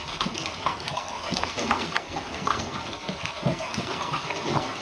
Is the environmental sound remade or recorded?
remade